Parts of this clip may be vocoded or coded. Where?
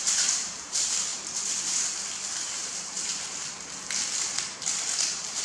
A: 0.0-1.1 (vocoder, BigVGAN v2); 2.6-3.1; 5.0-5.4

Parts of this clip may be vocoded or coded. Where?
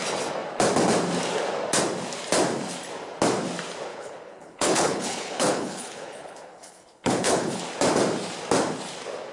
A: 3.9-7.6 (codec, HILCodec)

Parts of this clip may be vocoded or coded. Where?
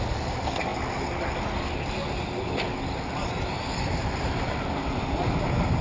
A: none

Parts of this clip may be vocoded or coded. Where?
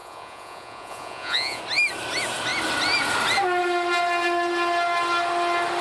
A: 0.0-1.6 (vocoder, Vocos)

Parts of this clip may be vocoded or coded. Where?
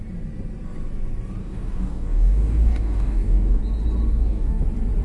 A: 1.4-3.6 (codec, DAC); 4.1-4.6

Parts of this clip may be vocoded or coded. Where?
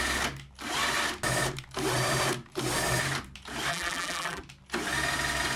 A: 3.7-4.4 (vocoder, BigVGAN v2)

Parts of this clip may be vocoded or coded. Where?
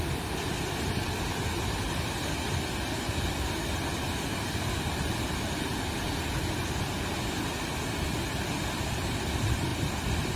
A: none